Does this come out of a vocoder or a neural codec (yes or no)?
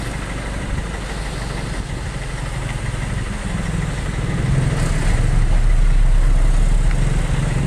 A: no